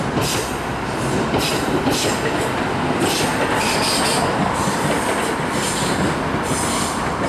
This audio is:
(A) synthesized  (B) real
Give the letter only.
B